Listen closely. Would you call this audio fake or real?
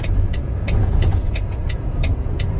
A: fake